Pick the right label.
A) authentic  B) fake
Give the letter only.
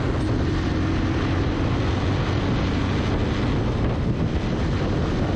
A